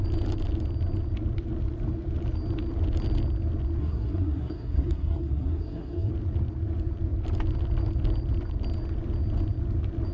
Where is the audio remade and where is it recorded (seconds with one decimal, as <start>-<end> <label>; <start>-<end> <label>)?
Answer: 0.0-3.8 recorded; 3.8-6.1 remade; 6.1-10.1 recorded